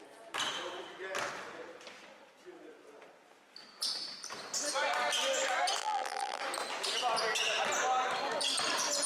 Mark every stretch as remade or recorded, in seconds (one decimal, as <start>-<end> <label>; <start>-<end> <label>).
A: 0.0-5.8 recorded; 5.8-6.4 remade; 6.4-9.1 recorded